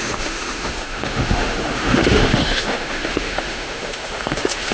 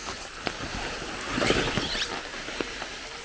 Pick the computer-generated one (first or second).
first